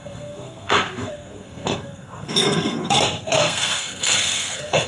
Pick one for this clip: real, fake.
fake